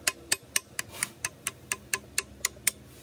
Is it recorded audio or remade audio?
recorded